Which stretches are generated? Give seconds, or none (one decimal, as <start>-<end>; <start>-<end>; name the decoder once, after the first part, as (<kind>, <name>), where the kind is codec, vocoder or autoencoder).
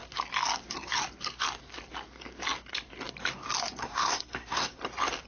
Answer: 3.8-4.8 (codec, SNAC)